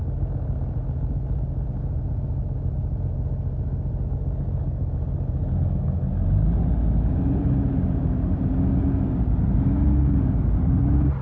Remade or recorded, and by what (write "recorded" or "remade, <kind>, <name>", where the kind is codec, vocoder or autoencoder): recorded